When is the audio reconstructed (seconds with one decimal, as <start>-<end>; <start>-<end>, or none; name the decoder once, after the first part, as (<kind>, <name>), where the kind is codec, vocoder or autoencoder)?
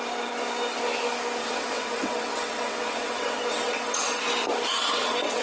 1.4-4.2 (vocoder, WaveNeXt); 4.7-5.4